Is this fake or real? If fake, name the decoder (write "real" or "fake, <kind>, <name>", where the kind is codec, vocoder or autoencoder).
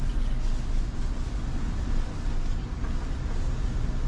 real